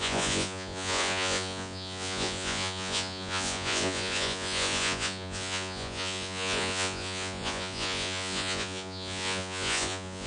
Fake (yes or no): yes